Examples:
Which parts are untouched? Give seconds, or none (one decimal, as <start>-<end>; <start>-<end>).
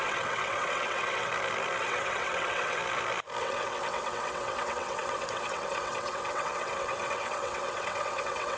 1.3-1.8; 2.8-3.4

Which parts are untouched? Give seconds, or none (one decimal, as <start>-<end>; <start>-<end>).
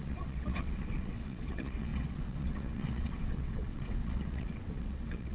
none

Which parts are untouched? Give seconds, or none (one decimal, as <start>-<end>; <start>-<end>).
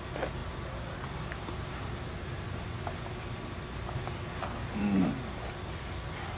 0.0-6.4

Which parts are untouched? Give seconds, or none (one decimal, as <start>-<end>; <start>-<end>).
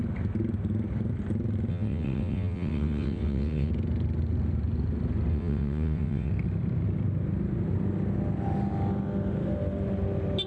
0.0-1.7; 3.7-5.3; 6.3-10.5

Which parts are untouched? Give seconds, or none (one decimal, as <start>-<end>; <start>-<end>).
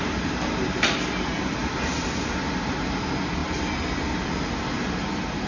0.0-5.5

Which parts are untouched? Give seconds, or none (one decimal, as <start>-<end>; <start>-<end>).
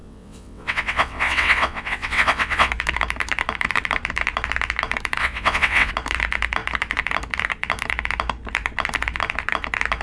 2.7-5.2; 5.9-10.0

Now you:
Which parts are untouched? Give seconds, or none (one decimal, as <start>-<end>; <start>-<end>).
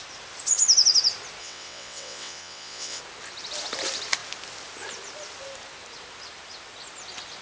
0.0-1.4; 3.0-7.4